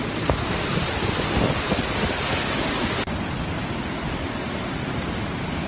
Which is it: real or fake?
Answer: real